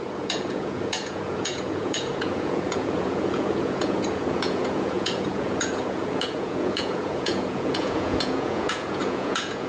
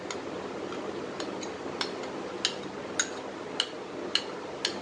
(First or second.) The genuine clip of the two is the second